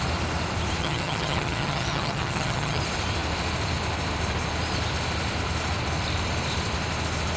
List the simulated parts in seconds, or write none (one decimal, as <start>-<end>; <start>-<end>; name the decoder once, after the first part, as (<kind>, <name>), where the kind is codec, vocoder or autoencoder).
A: 0.8-2.8 (vocoder, HiFi-GAN)